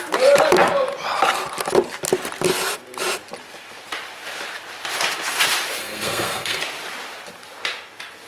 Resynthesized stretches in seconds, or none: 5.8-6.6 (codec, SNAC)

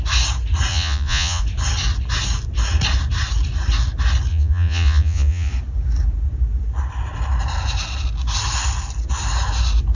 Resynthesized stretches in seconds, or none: 0.7-1.4 (vocoder, Vocos); 4.3-5.5

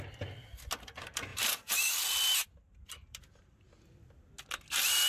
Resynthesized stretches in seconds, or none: 1.3-1.9 (vocoder, BigVGAN v2); 2.4-3.7

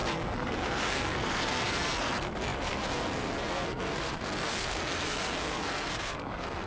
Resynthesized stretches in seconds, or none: 0.0-6.7 (codec, SNAC)

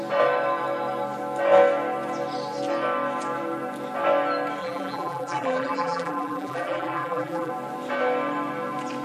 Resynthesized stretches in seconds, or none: 4.6-7.5 (vocoder, BigVGAN v2)

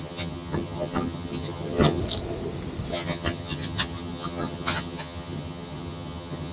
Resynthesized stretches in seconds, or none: 0.0-2.0 (vocoder, HiFi-GAN); 2.9-6.5